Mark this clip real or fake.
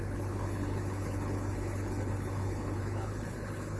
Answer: fake